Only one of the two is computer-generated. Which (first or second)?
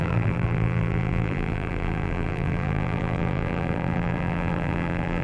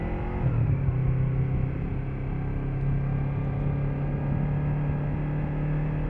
first